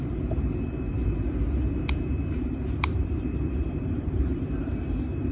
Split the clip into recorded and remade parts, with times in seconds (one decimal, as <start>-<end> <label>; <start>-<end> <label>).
0.0-1.0 remade; 1.0-2.4 recorded; 2.4-5.3 remade